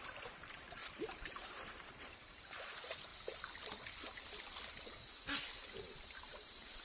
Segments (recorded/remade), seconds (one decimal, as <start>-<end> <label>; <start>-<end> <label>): 0.0-3.1 remade; 3.1-5.9 recorded; 5.9-6.8 remade